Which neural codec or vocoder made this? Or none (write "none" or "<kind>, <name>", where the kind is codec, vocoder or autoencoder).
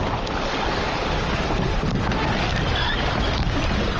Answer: none